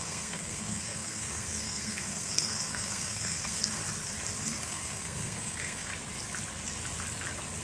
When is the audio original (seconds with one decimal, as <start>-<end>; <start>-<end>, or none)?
3.8-4.4; 5.9-7.6